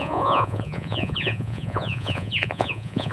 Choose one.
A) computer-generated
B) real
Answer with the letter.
A